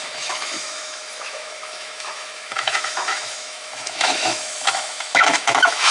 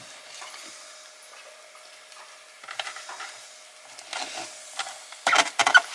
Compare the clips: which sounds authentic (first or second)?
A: second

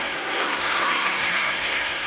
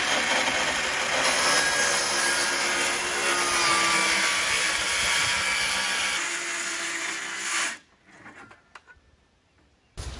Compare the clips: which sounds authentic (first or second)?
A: second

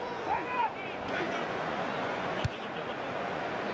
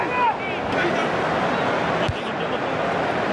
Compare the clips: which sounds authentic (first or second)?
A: second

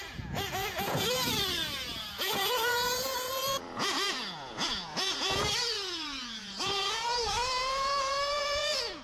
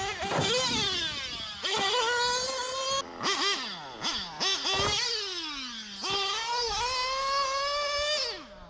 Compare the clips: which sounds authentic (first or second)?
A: second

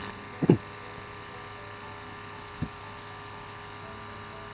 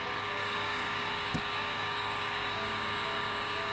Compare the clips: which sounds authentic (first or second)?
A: first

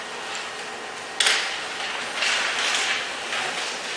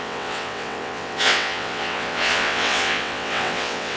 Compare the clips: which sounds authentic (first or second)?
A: first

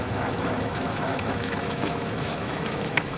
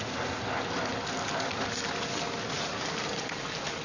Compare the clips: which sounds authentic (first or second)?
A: second